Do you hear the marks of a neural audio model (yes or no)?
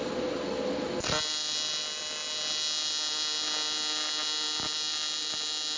no